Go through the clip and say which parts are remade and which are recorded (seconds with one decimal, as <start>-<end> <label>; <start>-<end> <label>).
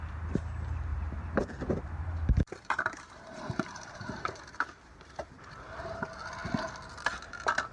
0.0-0.9 recorded; 0.9-5.5 remade; 5.5-7.7 recorded